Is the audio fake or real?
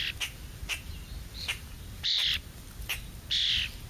real